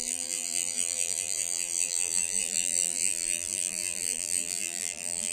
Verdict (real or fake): fake